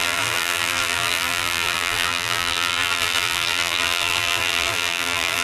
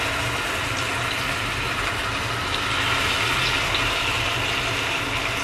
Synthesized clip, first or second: first